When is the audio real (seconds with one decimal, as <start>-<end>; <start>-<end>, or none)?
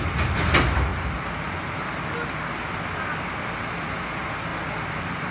0.0-5.3